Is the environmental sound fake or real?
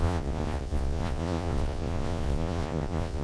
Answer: fake